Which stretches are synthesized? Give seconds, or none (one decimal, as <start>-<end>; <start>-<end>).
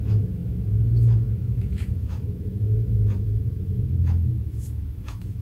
0.0-5.4